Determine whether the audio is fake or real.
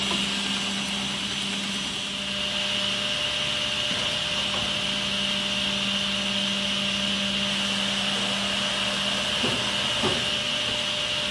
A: real